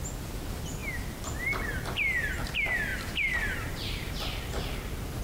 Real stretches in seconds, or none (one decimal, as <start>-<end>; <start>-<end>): 0.0-2.9; 4.1-5.2